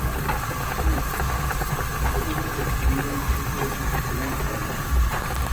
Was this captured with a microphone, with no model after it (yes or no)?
yes